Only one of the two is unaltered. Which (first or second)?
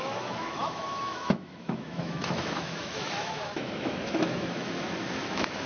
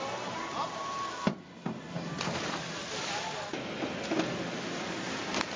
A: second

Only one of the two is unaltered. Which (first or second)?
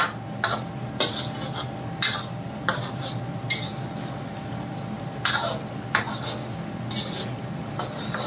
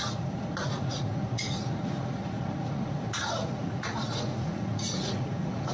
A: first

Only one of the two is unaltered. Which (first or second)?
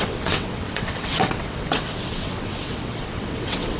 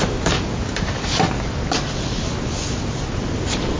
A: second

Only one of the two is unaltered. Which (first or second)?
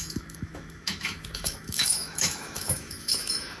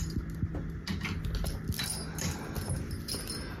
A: second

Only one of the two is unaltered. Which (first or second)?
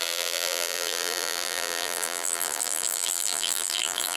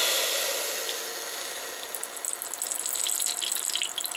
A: second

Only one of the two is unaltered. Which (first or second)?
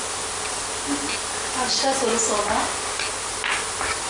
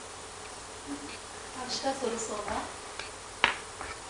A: first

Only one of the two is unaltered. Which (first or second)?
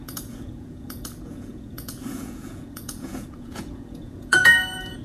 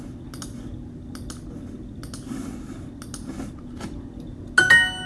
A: second